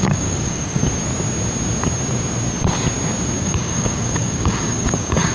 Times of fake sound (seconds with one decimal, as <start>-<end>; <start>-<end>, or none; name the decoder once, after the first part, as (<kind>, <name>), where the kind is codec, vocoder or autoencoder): 0.0-0.8 (codec, DAC); 3.4-5.3